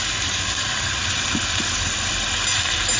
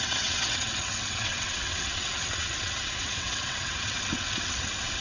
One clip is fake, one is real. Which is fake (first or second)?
second